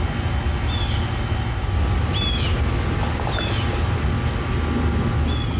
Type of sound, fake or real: real